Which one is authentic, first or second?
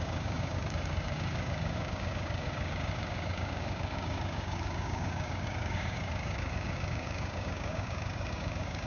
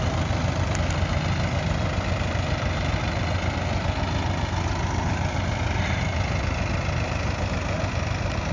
second